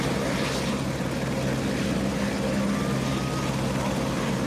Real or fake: real